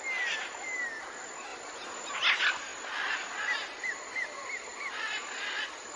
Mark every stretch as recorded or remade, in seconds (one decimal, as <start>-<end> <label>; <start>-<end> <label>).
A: 0.0-6.0 recorded